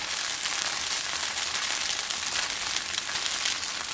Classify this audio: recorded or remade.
recorded